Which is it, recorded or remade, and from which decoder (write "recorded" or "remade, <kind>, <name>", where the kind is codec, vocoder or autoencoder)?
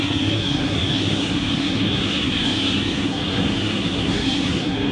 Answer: remade, codec, SNAC